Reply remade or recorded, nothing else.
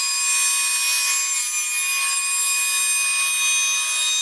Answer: recorded